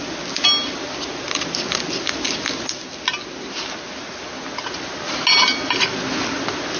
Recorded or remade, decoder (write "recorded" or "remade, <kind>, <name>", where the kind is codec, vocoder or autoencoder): recorded